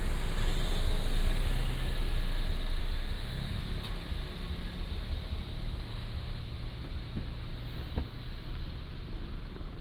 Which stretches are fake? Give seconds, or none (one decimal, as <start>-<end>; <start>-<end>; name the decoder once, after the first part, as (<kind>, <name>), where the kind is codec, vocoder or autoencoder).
2.8-3.6 (autoencoder, DAC-VAE); 5.9-6.4